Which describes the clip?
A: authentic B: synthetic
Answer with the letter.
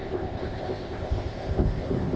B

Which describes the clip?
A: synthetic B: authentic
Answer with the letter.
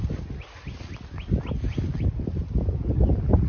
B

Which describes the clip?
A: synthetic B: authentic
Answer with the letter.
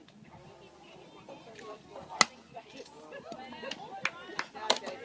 B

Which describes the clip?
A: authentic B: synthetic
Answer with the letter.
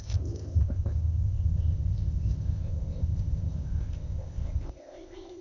B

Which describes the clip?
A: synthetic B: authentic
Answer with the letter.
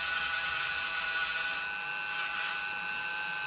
B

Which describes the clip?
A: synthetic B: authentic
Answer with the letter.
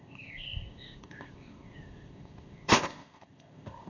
A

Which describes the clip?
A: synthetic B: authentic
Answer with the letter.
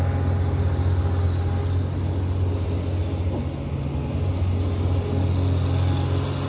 B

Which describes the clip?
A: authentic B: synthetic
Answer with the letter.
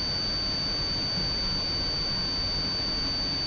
A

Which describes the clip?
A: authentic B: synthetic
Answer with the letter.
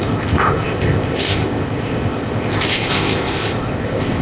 B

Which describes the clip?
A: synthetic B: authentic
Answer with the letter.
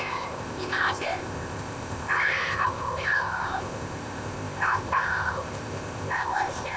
A